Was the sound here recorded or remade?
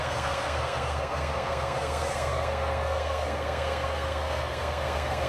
remade